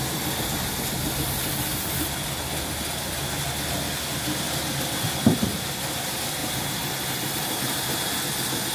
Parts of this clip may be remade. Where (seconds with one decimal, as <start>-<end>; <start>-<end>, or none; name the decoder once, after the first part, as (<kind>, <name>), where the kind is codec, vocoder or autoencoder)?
6.4-8.1 (vocoder, BigVGAN v2)